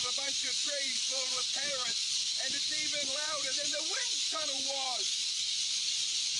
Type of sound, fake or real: fake